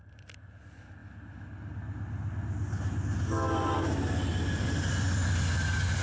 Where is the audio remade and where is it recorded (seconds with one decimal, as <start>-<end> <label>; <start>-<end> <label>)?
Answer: 0.0-6.0 recorded